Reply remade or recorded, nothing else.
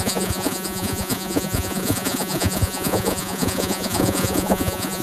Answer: remade